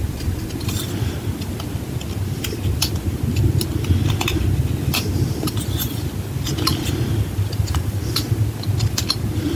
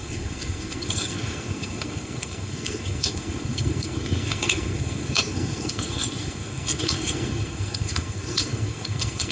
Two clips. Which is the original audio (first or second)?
first